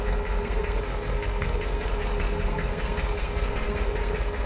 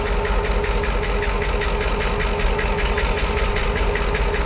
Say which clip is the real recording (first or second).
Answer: second